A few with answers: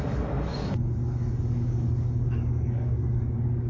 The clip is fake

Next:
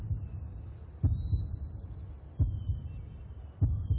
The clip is real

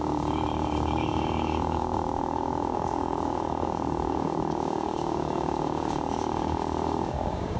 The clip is fake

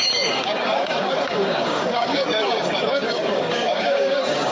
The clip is fake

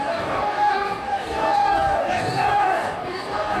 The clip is fake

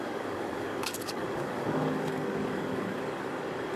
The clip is fake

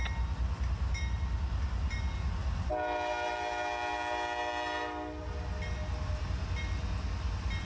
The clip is real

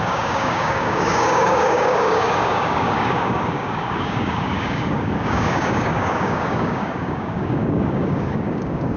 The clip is fake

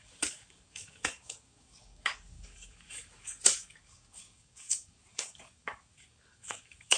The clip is fake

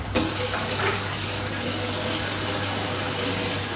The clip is fake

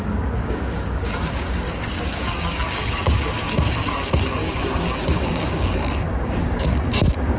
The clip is fake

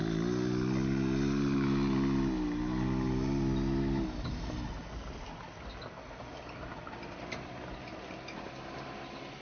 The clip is real